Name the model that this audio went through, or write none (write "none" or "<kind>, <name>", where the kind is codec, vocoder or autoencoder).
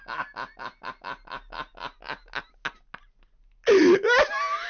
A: none